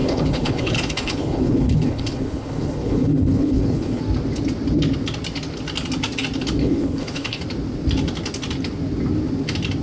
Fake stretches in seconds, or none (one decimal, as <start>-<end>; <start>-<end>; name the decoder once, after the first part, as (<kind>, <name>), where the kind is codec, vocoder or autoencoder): 0.0-4.0 (codec, HILCodec); 6.6-7.4